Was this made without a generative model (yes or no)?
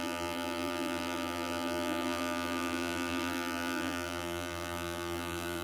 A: no